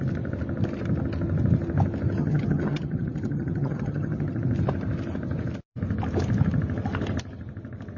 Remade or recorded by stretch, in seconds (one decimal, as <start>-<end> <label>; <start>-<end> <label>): 0.0-2.2 recorded; 2.2-4.4 remade; 4.4-8.0 recorded